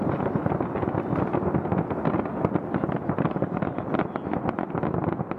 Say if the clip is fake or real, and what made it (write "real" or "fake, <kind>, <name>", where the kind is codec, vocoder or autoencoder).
real